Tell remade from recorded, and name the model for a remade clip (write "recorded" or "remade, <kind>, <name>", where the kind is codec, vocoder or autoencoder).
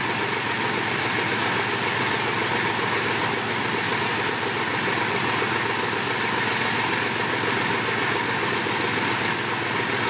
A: recorded